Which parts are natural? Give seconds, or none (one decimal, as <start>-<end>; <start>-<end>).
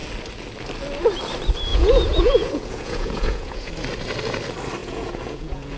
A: 0.0-1.7; 3.7-4.8